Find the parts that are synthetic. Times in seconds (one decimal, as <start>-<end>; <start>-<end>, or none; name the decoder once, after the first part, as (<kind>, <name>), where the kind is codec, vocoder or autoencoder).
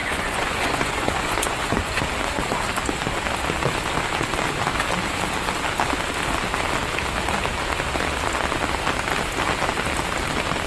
0.0-2.0 (vocoder, Vocos)